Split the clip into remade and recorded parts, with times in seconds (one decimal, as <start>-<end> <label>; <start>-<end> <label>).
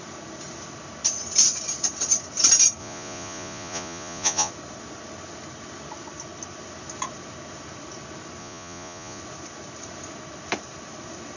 0.0-2.8 recorded; 2.8-4.5 remade; 4.5-8.4 recorded; 8.4-9.2 remade; 9.2-11.4 recorded